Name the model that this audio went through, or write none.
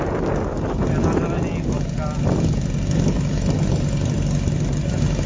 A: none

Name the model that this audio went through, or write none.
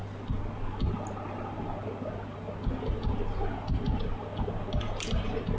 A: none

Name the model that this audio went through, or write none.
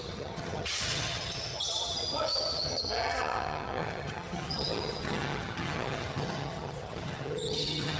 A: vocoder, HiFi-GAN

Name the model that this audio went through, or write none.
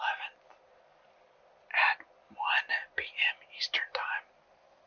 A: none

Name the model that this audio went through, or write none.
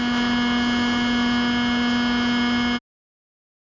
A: none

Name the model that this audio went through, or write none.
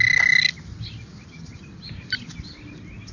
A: none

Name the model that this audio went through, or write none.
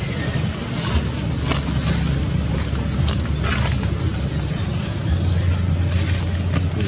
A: none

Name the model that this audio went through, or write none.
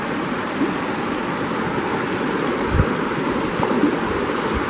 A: none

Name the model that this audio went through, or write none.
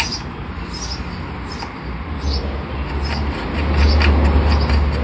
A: none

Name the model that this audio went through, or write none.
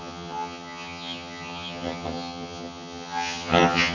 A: vocoder, HiFi-GAN